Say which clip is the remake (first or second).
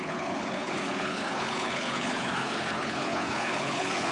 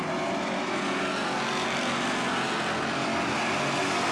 first